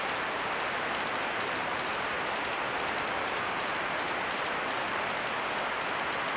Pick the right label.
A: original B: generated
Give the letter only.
A